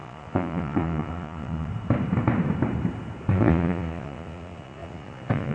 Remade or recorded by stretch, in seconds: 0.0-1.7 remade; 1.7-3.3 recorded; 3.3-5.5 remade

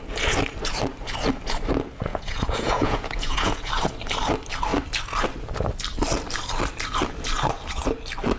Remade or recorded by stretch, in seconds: 0.0-2.1 recorded; 2.1-3.7 remade; 3.7-8.4 recorded

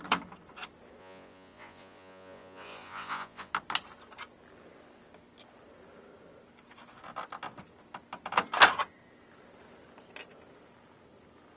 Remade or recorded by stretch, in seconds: 0.0-1.0 recorded; 1.0-3.5 remade; 3.5-11.6 recorded